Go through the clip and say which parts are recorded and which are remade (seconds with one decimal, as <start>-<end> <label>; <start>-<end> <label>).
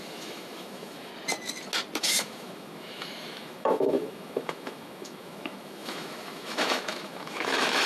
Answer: 0.0-1.1 remade; 1.1-2.0 recorded; 2.0-7.9 remade